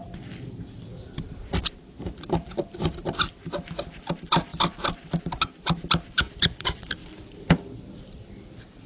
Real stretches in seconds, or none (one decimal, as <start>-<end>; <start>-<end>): 0.0-0.9; 3.9-4.5; 5.2-7.0; 8.5-8.9